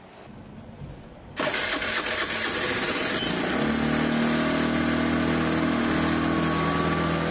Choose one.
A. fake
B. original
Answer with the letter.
B